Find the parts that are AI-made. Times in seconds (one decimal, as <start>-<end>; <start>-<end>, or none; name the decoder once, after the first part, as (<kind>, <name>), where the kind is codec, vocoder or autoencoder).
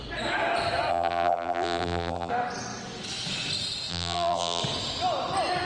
0.9-2.3 (vocoder, BigVGAN v2); 3.9-4.6